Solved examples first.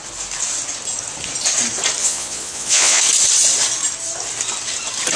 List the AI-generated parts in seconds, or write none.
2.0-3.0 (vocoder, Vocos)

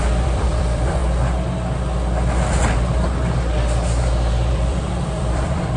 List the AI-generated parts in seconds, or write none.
0.0-1.0 (vocoder, BigVGAN v2); 4.5-5.8

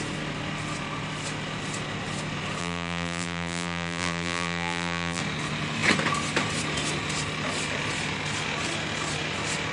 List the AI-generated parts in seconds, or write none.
2.6-5.2 (vocoder, BigVGAN v2)

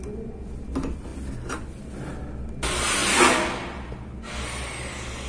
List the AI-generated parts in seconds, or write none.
none

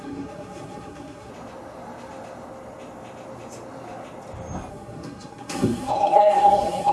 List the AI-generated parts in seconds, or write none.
0.0-1.3 (codec, SNAC); 4.7-6.9

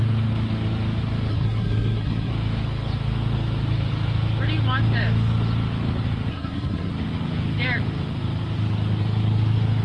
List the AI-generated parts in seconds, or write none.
1.3-2.3 (codec, SNAC); 6.3-6.9

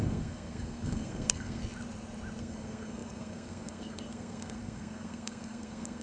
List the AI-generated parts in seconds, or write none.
0.0-1.6 (codec, SNAC); 2.4-6.0

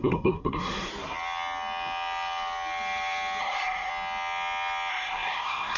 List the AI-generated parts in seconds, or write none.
0.0-0.9 (codec, SNAC); 3.4-3.9; 4.9-5.8